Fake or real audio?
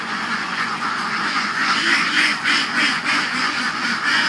fake